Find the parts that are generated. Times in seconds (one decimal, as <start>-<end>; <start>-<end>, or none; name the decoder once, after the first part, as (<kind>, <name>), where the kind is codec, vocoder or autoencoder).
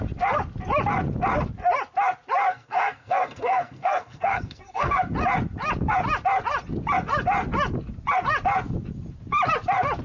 2.5-5.0 (codec, SNAC)